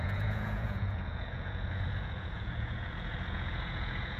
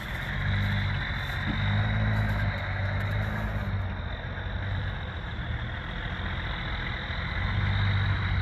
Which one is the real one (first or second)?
second